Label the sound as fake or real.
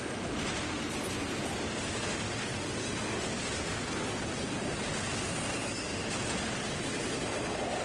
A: real